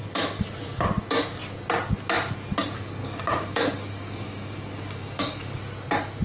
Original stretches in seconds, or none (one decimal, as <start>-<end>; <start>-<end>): 0.0-3.0; 5.6-6.2